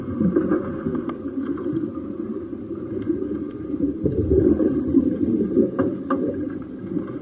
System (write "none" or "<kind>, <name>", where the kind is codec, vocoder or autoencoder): vocoder, BigVGAN v2